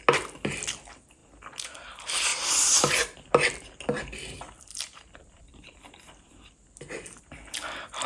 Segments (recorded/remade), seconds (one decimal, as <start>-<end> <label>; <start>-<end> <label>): 0.0-8.1 recorded